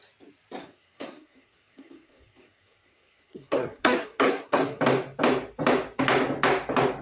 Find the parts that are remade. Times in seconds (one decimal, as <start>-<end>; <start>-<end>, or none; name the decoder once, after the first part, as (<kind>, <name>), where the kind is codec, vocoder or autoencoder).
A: 0.6-4.8 (codec, SNAC)